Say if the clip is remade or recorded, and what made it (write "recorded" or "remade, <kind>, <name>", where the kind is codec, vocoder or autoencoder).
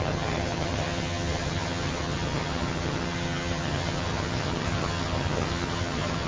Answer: remade, vocoder, HiFi-GAN